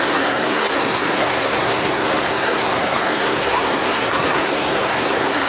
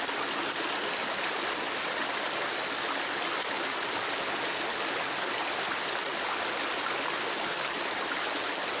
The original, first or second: second